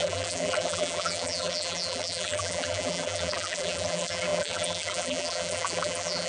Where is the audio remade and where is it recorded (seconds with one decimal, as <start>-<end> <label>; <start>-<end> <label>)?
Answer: 0.0-6.3 remade